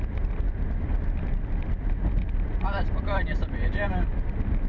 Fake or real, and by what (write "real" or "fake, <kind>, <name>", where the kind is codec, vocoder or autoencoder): fake, vocoder, BigVGAN v2